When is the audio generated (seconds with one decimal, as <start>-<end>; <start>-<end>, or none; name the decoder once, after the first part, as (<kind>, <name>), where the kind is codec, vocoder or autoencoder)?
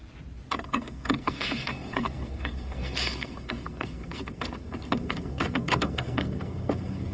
0.5-7.1 (codec, SNAC)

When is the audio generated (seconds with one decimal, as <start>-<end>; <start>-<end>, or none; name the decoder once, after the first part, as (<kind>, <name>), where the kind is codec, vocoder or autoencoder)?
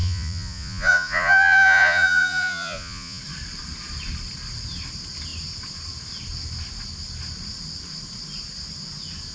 0.0-3.2 (vocoder, Vocos)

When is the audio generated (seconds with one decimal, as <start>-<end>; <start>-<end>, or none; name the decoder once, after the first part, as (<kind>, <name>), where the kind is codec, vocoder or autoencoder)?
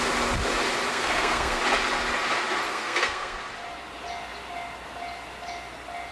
0.9-1.6 (codec, SNAC); 2.7-3.4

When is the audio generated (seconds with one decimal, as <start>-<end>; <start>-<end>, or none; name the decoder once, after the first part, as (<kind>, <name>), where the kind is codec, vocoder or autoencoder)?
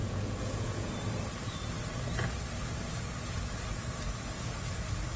0.0-0.9 (vocoder, Vocos)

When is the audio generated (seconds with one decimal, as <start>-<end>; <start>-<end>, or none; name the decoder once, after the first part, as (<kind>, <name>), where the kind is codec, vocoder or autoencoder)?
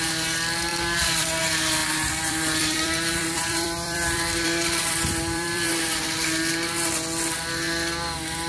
0.7-1.4 (vocoder, BigVGAN v2); 1.8-5.7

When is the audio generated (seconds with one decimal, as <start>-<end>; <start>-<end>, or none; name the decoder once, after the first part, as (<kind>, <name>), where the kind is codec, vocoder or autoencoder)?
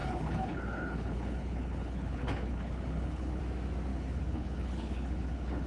0.0-3.4 (codec, HILCodec); 3.9-5.7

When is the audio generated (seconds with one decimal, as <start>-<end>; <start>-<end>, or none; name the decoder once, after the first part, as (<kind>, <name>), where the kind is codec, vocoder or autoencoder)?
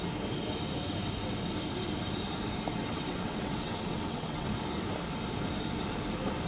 2.8-4.5 (vocoder, WaveNeXt)